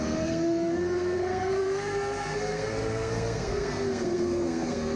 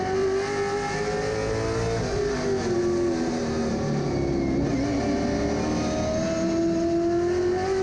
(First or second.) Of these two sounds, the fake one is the first